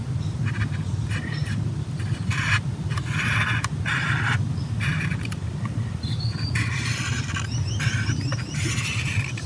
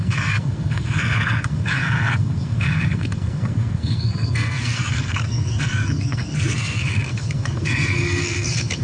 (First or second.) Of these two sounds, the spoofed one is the second